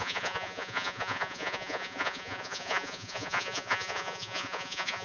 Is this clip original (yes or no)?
no